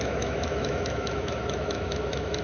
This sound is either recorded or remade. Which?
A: remade